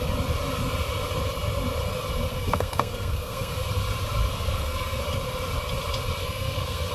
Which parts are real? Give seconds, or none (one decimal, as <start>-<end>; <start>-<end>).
0.0-2.3; 3.5-4.3; 5.0-6.2